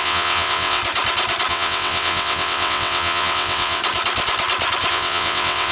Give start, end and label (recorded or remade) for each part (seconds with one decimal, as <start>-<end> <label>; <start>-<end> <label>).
0.0-0.8 remade; 0.8-1.5 recorded; 1.5-3.8 remade; 3.8-4.9 recorded; 4.9-5.7 remade